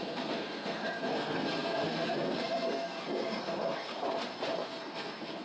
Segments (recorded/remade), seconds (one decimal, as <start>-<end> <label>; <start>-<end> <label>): 0.0-3.9 remade; 3.9-4.5 recorded; 4.5-5.4 remade